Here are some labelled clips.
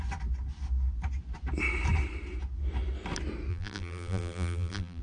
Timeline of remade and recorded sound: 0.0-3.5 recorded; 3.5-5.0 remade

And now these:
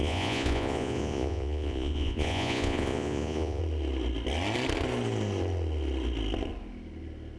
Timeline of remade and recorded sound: 0.0-3.6 remade; 3.6-7.4 recorded

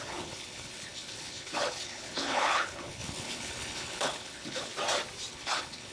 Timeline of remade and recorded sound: 0.0-4.7 remade; 4.7-5.3 recorded; 5.3-5.9 remade

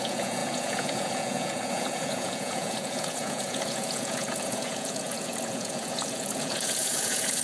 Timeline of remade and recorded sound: 0.0-7.4 remade

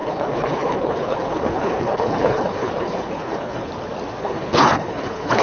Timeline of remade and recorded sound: 0.0-3.7 remade; 3.7-4.2 recorded; 4.2-5.4 remade

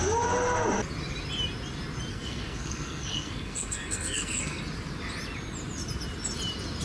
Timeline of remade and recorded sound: 0.0-2.1 recorded; 2.1-4.6 remade; 4.6-6.8 recorded

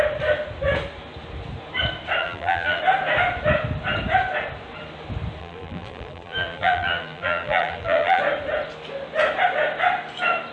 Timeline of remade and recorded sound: 0.0-2.2 recorded; 2.2-2.8 remade; 2.8-5.4 recorded; 5.4-8.2 remade; 8.2-10.5 recorded

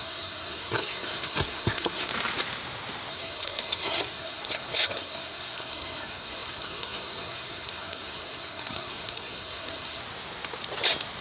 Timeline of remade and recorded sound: 0.0-2.1 remade; 2.1-3.1 recorded; 3.1-10.0 remade; 10.0-11.2 recorded